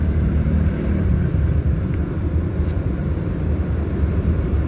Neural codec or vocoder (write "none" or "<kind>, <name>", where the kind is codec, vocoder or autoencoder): vocoder, BigVGAN v2